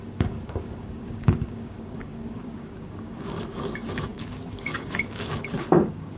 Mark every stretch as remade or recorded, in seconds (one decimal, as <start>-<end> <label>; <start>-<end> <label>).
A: 0.0-6.2 remade